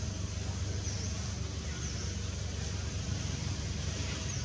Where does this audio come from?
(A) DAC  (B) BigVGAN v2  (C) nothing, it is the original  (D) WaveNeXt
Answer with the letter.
C